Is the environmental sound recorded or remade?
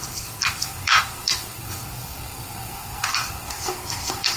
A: remade